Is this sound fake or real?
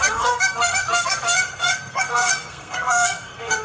fake